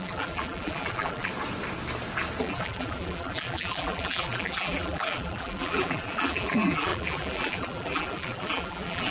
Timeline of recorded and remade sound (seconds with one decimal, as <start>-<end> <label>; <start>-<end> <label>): 0.0-1.3 remade; 1.3-2.4 recorded; 2.4-9.1 remade